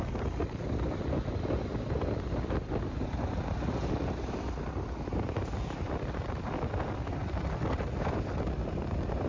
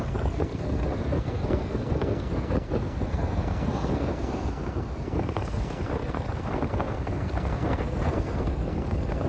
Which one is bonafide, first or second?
first